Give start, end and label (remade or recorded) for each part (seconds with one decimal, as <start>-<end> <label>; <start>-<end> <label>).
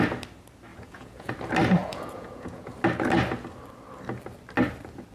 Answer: 0.0-0.7 recorded; 0.7-1.3 remade; 1.3-1.8 recorded; 1.8-2.7 remade; 2.7-5.1 recorded